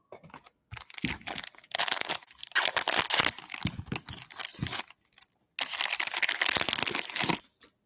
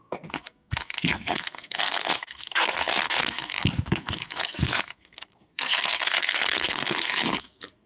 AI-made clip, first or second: second